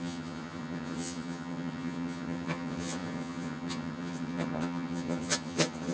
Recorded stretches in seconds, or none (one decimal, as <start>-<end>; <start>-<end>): none